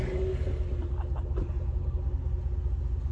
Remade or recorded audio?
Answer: recorded